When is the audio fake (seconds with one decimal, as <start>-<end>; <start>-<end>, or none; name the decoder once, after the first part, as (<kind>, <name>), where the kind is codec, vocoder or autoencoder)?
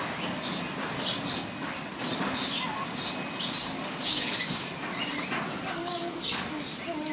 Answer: 3.6-4.7 (codec, DAC); 5.8-6.5